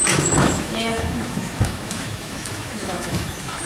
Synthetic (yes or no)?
yes